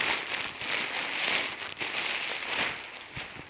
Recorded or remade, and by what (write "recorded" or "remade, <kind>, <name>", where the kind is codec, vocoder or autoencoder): recorded